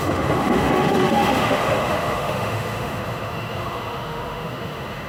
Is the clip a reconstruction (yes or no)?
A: yes